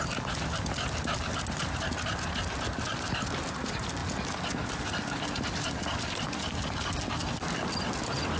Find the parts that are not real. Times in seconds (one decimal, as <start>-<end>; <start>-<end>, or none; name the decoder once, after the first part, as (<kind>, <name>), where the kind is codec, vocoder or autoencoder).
none